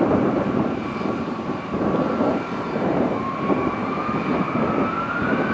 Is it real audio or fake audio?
fake